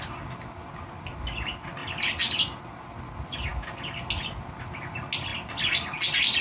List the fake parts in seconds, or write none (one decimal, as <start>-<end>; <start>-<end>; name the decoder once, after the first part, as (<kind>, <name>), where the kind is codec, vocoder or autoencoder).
none